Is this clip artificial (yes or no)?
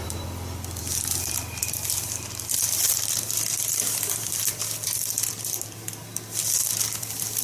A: yes